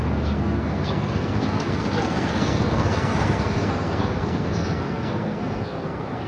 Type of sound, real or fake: fake